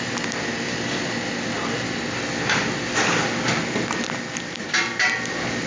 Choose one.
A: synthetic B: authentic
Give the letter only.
B